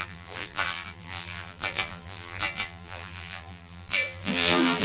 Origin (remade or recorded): remade